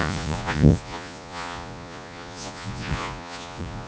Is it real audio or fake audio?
fake